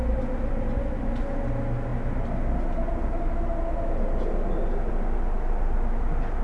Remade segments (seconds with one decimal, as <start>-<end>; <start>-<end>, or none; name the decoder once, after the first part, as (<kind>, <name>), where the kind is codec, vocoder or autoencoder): none

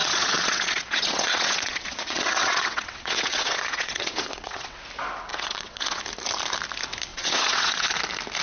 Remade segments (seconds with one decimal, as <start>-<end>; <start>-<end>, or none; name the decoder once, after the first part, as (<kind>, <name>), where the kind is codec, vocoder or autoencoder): 0.0-4.8 (vocoder, WaveNeXt); 5.3-6.0; 7.1-8.0

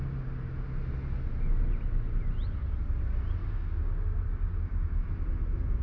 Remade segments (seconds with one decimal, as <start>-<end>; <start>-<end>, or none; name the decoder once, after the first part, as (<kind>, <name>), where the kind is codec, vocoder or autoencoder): 3.4-3.9 (codec, DAC); 4.3-5.0

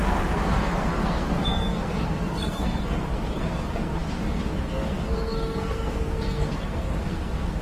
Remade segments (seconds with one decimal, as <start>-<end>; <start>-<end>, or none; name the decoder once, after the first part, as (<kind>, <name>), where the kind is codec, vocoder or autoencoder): 0.0-7.6 (codec, SNAC)

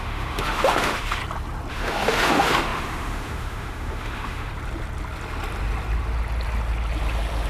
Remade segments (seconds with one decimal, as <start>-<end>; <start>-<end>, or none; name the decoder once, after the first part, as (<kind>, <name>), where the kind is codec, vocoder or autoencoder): 0.0-1.2 (autoencoder, DAC-VAE); 1.7-4.5